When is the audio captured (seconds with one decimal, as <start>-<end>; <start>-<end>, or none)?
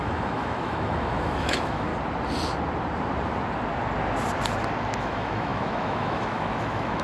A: 1.9-5.0